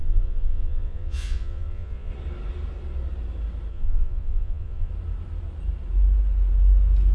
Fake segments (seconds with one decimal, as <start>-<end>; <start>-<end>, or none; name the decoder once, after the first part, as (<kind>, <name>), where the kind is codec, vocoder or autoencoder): 0.0-2.1 (vocoder, Vocos); 3.7-4.9